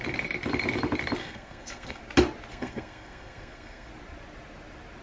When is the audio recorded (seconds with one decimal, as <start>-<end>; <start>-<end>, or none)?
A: 0.0-1.2; 2.0-2.5; 3.9-5.0